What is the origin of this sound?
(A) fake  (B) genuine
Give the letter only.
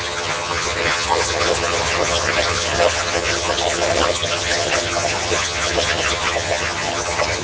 A